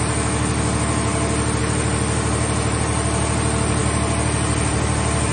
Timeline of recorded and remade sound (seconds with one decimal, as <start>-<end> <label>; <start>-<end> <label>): 0.0-5.3 recorded